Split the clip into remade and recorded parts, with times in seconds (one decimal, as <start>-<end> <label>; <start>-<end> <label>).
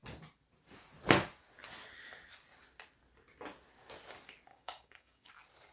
0.0-4.5 recorded; 4.5-5.3 remade; 5.3-5.7 recorded